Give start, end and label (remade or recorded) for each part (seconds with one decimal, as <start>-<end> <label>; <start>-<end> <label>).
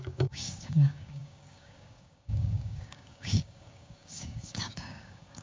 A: 0.0-5.4 remade